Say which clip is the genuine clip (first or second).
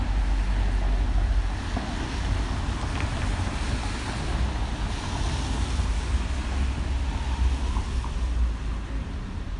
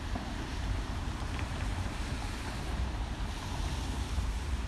first